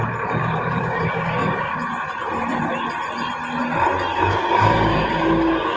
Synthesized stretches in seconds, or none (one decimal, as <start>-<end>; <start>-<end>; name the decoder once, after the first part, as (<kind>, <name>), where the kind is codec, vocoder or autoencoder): 0.4-1.8 (codec, DAC); 4.1-5.8